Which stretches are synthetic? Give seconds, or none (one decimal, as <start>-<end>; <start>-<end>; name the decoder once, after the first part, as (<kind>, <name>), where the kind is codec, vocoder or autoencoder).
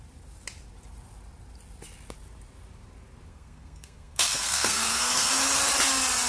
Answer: 3.3-5.3 (codec, SNAC)